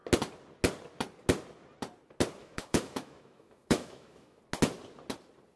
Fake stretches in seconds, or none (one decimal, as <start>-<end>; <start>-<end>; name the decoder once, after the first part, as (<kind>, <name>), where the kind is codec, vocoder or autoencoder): 2.4-4.4 (autoencoder, DAC-VAE)